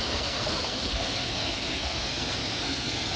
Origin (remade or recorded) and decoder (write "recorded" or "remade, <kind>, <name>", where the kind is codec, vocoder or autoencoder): remade, codec, SNAC